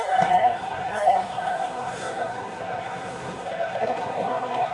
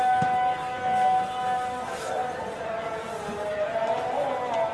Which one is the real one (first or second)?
second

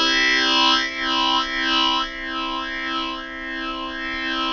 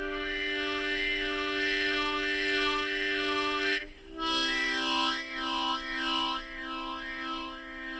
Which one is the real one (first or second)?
first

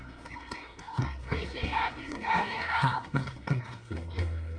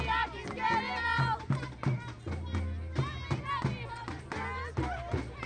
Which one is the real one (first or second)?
second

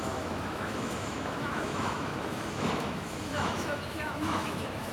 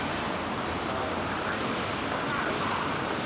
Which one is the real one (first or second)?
second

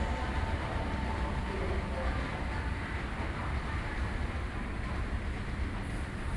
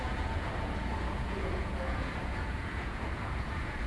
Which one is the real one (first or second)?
first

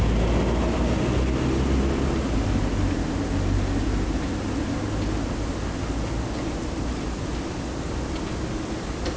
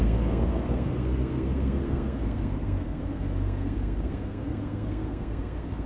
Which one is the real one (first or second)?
first